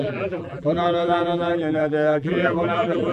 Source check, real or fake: fake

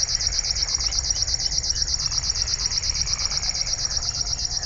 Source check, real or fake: real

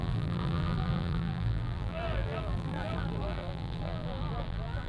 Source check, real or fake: fake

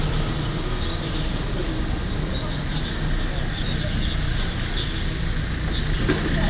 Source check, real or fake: real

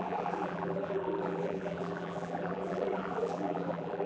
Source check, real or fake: fake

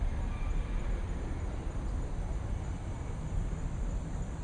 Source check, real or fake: fake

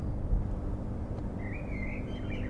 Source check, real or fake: fake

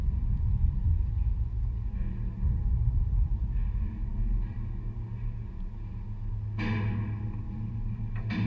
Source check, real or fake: real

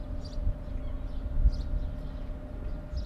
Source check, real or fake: real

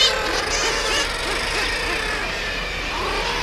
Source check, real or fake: real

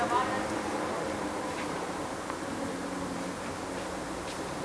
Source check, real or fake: fake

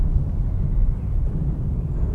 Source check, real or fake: fake